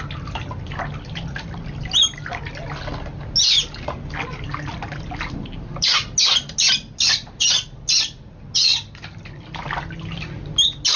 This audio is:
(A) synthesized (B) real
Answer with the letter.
B